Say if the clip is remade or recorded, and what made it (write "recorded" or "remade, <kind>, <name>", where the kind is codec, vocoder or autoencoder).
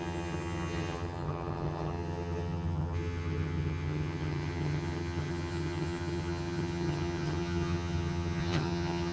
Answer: remade, vocoder, HiFi-GAN